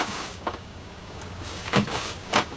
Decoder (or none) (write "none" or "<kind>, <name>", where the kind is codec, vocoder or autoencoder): codec, DAC